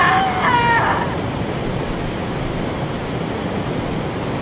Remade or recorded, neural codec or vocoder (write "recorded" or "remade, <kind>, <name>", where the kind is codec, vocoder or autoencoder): recorded